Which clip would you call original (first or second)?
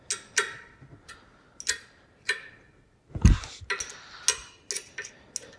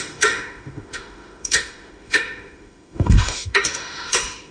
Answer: first